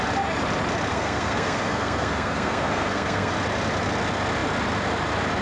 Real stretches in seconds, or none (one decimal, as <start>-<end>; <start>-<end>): 0.0-0.9; 3.3-5.4